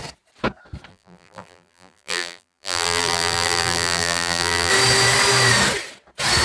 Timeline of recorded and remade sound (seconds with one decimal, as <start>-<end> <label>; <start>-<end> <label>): 0.0-0.9 recorded; 0.9-4.7 remade; 4.7-6.4 recorded